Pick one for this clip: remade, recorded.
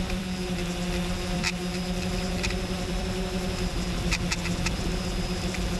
remade